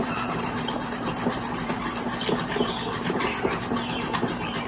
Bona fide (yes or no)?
no